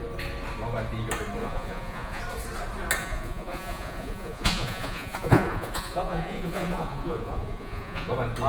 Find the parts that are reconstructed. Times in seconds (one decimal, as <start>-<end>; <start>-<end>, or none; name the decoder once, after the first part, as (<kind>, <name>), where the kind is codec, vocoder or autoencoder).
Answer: 1.4-2.2 (vocoder, Vocos); 3.0-8.1

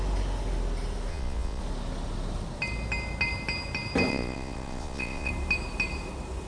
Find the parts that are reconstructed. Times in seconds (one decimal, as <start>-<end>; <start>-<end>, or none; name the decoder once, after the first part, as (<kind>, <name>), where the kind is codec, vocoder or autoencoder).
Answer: 1.1-1.6 (vocoder, Vocos); 4.1-5.3